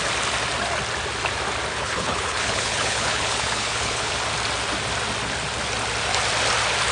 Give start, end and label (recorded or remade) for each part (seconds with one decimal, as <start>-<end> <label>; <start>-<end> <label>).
0.0-1.7 recorded; 1.7-4.1 remade; 4.1-6.9 recorded